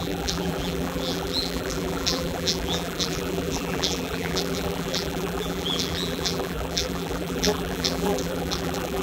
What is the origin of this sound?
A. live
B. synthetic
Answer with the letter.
B